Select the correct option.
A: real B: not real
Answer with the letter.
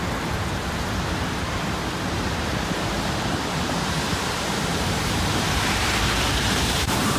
B